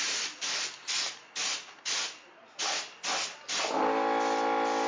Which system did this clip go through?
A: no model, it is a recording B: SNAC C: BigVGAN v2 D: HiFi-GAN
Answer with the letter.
A